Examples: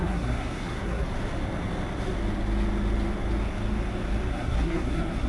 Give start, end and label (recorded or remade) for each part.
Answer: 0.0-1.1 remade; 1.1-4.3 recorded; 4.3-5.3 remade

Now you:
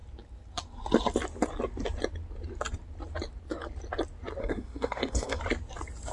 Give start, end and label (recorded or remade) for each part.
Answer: 0.0-4.4 recorded; 4.4-5.4 remade; 5.4-6.1 recorded

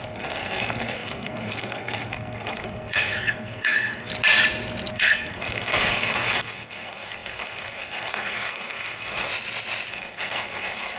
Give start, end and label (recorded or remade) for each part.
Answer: 0.0-4.1 remade; 4.1-4.9 recorded; 4.9-9.3 remade; 9.3-9.9 recorded; 9.9-11.0 remade

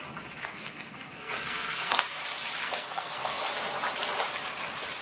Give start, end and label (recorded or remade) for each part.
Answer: 0.0-0.4 recorded; 0.4-2.2 remade; 2.2-2.6 recorded; 2.6-3.5 remade; 3.5-5.0 recorded

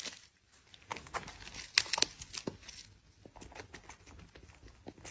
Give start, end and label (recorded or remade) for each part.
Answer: 0.0-5.1 recorded

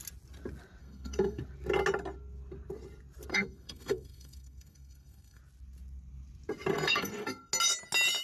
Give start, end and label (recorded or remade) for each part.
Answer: 0.0-0.8 recorded; 0.8-1.4 remade; 1.4-3.3 recorded; 3.3-5.4 remade; 5.4-6.7 recorded; 6.7-7.5 remade; 7.5-8.2 recorded